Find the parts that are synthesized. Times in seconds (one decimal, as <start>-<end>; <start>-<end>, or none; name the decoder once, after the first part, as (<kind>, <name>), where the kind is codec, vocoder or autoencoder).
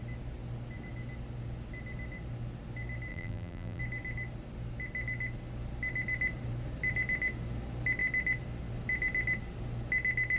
3.1-3.8 (vocoder, BigVGAN v2)